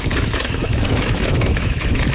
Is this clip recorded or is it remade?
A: remade